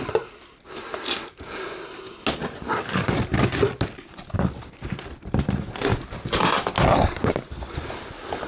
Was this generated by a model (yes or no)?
no